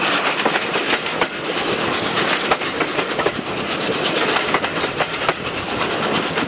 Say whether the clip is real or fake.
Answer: real